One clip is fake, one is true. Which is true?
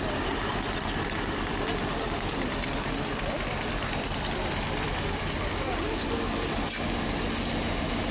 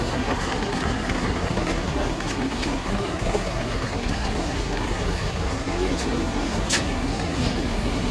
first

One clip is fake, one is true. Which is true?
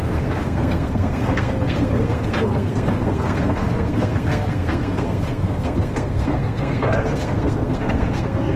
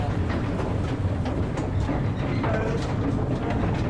second